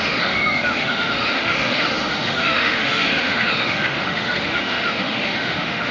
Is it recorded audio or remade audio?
remade